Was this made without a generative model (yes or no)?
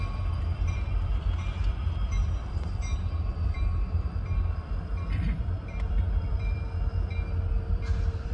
no